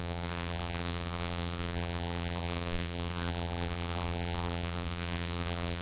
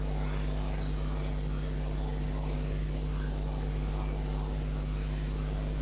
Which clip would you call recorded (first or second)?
second